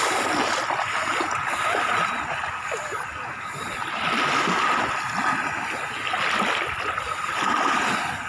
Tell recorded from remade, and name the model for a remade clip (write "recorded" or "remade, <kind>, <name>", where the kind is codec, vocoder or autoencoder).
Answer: recorded